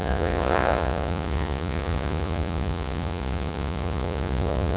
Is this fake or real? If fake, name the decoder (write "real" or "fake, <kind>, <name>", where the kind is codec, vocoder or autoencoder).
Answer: fake, vocoder, Vocos